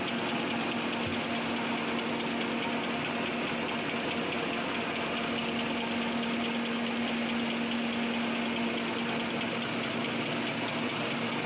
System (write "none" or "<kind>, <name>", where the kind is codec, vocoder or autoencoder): none